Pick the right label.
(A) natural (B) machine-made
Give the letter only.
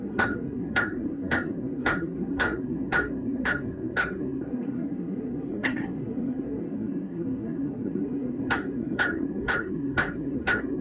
B